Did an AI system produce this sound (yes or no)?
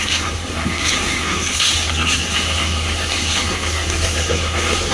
yes